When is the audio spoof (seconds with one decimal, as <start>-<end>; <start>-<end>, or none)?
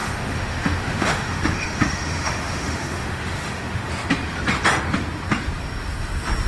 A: 0.0-3.9